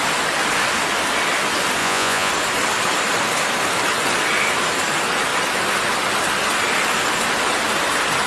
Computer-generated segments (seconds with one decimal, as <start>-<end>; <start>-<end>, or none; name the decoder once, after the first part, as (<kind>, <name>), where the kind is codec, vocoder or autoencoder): 1.8-2.3 (vocoder, Vocos)